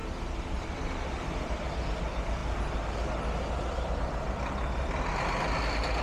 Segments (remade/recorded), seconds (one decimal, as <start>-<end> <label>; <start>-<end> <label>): 0.0-6.0 recorded

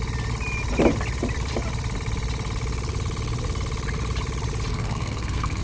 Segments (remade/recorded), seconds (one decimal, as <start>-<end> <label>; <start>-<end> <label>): 0.0-4.7 recorded; 4.7-5.6 remade

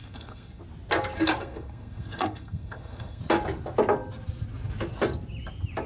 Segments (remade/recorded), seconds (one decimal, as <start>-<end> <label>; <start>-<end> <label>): 0.0-0.6 remade; 0.6-1.4 recorded; 1.4-3.2 remade; 3.2-5.9 recorded

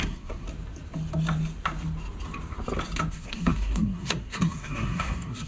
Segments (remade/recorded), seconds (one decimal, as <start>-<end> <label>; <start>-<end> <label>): 0.0-0.5 remade; 0.5-3.1 recorded; 3.1-5.5 remade